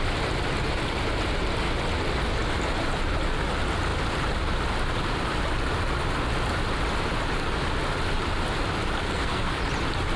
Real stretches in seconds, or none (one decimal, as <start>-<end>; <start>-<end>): 0.0-9.0; 9.6-10.2